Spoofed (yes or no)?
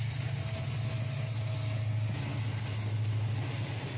no